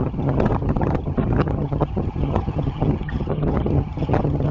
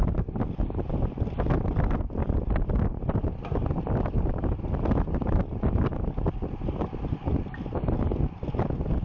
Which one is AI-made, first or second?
first